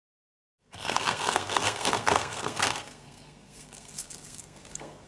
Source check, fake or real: fake